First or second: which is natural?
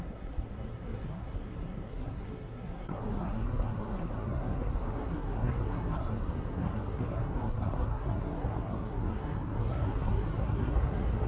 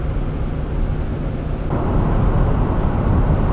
second